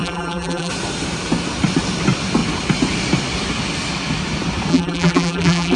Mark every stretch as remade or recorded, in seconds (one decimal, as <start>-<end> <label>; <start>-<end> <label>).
0.0-0.7 remade; 0.7-4.7 recorded; 4.7-5.8 remade